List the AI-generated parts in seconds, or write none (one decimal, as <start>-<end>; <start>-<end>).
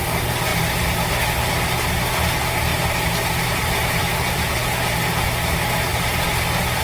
0.5-1.1; 2.7-4.5